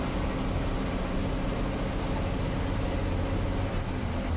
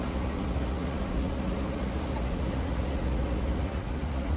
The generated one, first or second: second